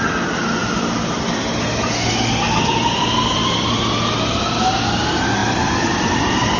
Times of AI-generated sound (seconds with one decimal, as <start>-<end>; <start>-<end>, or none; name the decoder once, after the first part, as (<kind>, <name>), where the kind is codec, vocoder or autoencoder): none